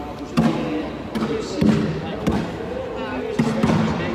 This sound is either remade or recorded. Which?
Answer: recorded